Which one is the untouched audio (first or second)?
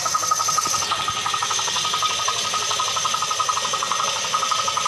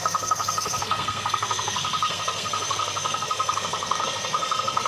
first